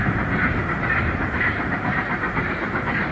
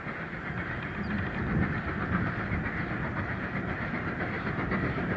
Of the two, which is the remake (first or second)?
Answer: first